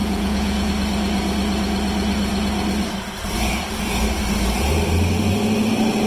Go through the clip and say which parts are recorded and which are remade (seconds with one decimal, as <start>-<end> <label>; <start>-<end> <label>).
0.0-0.7 remade; 0.7-6.1 recorded